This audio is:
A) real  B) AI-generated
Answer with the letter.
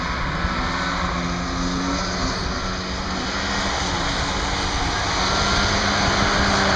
A